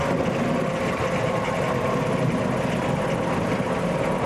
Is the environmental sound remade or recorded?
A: recorded